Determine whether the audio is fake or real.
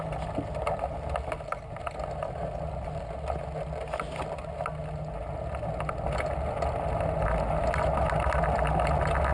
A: real